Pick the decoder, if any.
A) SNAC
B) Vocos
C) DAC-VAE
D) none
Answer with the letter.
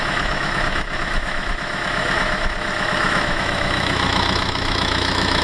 C